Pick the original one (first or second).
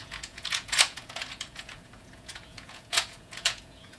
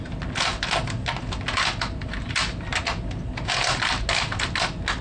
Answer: second